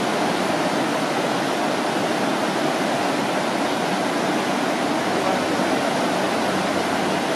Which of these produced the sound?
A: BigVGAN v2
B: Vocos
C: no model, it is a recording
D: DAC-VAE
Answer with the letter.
C